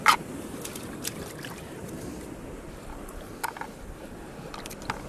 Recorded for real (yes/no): yes